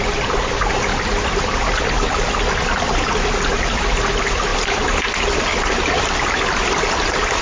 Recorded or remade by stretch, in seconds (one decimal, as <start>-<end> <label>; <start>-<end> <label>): 0.0-7.4 recorded